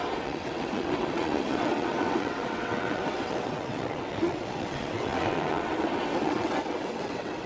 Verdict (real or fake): fake